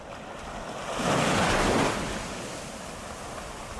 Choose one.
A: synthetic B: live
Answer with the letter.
B